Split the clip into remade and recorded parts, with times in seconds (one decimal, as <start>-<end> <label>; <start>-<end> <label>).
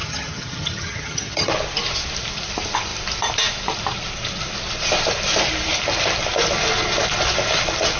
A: 0.0-1.5 remade; 1.5-8.0 recorded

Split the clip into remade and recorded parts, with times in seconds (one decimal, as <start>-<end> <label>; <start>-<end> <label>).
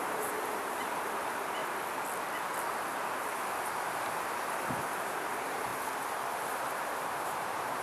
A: 0.0-1.6 remade; 1.6-5.3 recorded; 5.3-5.7 remade; 5.7-6.3 recorded; 6.3-7.8 remade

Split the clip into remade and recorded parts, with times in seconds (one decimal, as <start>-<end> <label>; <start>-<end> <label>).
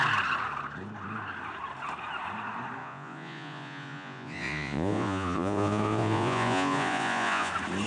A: 0.0-2.8 recorded; 2.8-7.5 remade; 7.5-7.9 recorded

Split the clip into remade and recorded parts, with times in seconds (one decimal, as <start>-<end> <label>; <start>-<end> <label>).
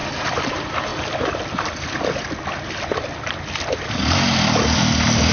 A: 0.0-5.3 recorded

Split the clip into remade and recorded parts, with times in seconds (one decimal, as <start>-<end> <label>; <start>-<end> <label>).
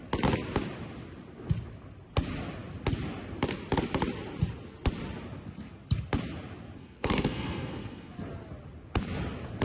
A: 0.0-6.8 recorded; 6.8-8.1 remade; 8.1-9.6 recorded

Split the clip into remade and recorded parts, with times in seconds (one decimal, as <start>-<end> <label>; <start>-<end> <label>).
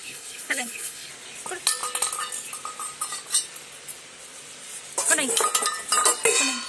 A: 0.0-1.1 remade; 1.1-6.7 recorded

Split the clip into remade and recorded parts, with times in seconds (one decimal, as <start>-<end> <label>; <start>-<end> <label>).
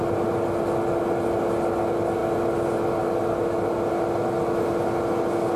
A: 0.0-5.6 recorded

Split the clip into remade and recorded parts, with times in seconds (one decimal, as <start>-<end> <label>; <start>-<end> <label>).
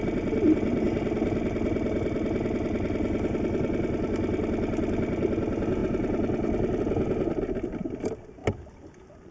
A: 0.0-9.3 recorded